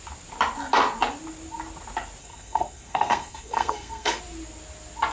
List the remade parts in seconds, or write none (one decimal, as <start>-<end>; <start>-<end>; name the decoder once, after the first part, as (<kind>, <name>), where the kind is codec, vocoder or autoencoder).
2.2-4.2 (codec, SNAC)

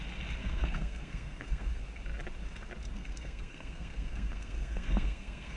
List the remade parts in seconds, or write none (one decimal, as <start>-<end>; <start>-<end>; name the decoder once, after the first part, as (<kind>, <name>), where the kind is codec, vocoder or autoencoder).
0.4-1.8 (codec, SNAC); 2.9-5.6